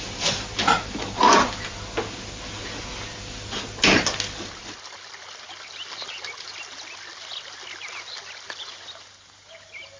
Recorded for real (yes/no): yes